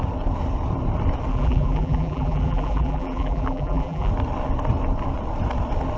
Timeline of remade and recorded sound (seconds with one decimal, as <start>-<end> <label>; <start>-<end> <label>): 0.0-1.3 recorded; 1.3-4.1 remade; 4.1-6.0 recorded